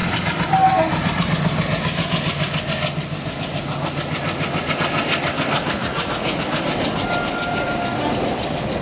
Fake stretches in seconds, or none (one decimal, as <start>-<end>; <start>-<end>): 5.8-6.4